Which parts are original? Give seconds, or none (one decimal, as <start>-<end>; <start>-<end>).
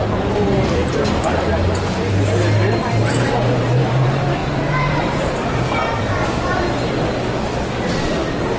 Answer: 5.8-8.6